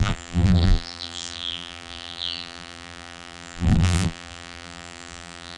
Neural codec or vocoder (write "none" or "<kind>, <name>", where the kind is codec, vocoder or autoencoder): vocoder, BigVGAN v2